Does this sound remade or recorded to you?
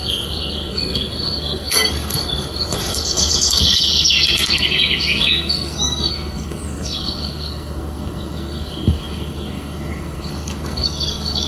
remade